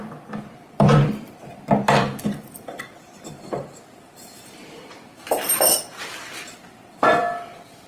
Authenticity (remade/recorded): remade